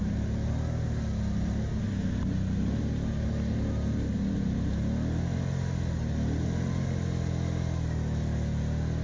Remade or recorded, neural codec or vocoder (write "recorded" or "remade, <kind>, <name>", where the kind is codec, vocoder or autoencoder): recorded